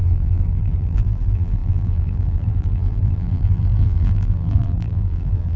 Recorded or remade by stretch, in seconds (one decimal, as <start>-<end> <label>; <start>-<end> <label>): 0.0-5.6 remade